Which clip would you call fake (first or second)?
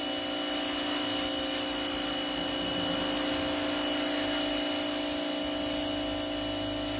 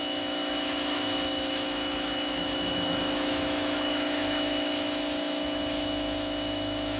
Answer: second